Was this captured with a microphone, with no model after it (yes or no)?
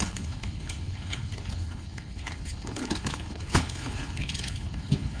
no